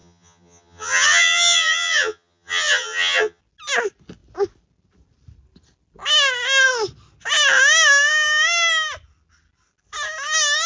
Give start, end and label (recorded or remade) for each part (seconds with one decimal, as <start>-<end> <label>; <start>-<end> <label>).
0.0-3.4 remade; 3.4-10.7 recorded